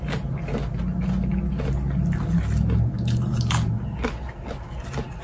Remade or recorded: recorded